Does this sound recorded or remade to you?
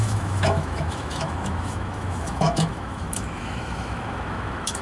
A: remade